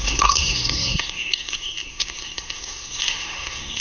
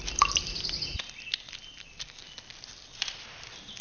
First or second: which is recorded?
second